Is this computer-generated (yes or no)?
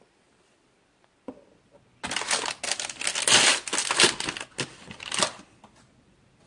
no